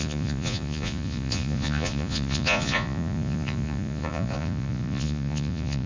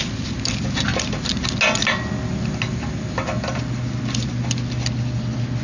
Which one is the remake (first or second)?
first